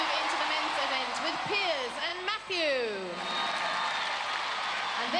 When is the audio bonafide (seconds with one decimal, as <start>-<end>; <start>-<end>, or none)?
0.0-5.2